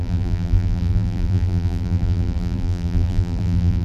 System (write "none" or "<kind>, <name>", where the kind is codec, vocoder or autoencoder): vocoder, BigVGAN v2